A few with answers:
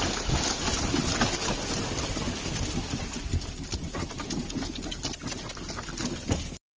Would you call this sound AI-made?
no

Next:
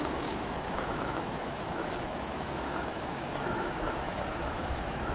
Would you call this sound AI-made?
yes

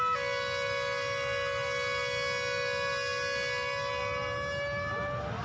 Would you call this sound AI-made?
no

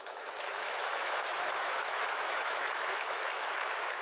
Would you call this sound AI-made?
yes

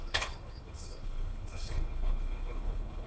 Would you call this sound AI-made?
yes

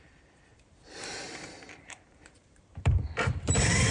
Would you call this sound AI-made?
yes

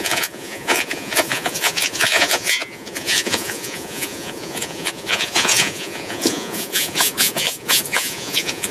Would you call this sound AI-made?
yes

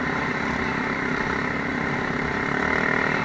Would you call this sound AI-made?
no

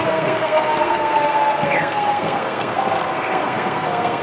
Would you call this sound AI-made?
yes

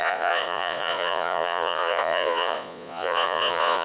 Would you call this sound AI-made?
yes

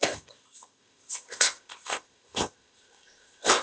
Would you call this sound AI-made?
yes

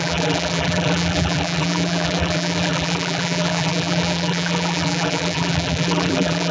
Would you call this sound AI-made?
yes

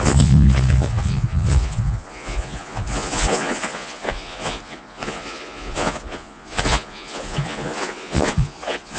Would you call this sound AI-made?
yes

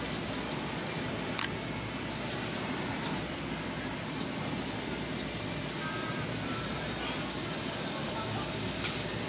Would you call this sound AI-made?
no